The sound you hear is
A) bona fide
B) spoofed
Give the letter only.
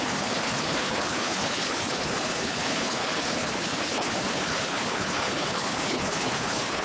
B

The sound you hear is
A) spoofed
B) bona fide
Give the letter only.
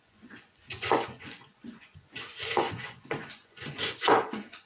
A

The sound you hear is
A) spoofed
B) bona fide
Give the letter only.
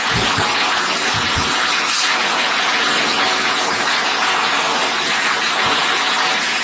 A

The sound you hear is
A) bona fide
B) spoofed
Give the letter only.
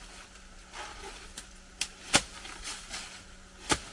A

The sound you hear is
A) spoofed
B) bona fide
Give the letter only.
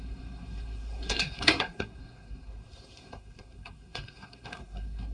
A